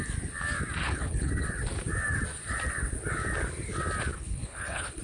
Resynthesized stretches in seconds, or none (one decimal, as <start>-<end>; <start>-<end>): 0.8-1.3; 4.1-5.0